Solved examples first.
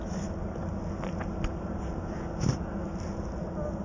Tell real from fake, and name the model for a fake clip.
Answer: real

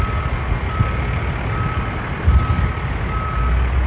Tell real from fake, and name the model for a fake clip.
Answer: real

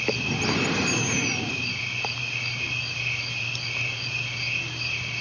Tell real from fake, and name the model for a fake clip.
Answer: real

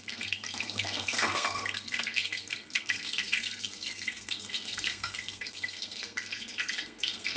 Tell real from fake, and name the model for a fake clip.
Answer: fake, codec, SNAC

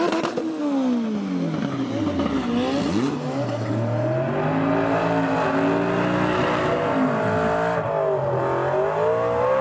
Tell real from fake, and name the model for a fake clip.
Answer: real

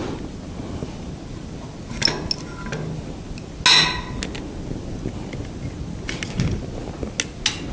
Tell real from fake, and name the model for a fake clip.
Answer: real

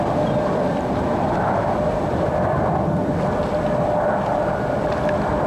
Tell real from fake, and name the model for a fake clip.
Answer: real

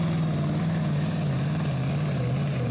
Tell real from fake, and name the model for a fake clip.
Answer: real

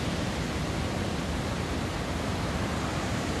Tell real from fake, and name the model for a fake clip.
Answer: real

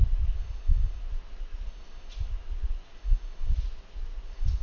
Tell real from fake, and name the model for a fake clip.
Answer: real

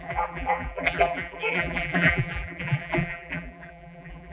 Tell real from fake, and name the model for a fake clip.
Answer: fake, vocoder, BigVGAN v2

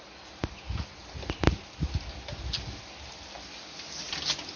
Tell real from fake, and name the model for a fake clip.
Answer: real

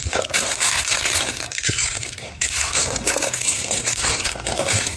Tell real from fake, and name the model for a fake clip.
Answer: fake, codec, SNAC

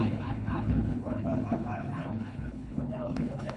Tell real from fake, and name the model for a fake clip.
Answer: fake, codec, HILCodec